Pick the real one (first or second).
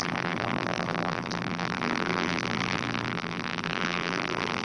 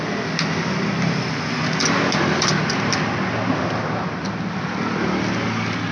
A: second